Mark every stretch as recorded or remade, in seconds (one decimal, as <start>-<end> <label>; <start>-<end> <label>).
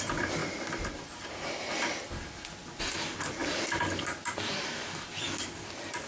0.0-0.4 remade; 0.4-2.8 recorded; 2.8-6.1 remade